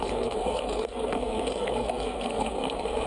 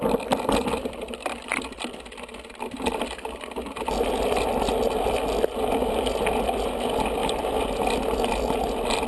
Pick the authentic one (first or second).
second